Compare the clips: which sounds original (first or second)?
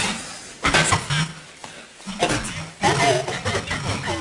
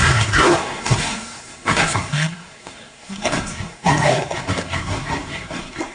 first